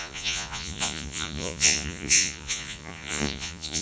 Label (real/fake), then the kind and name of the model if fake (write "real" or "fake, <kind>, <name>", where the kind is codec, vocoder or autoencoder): fake, vocoder, Vocos